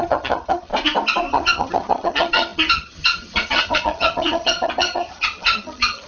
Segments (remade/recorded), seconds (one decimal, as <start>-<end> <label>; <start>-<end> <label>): 0.0-0.7 remade; 0.7-1.3 recorded; 1.3-6.1 remade